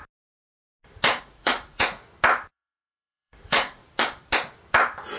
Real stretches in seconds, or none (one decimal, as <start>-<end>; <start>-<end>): 0.0-1.2; 2.0-2.5; 3.8-5.2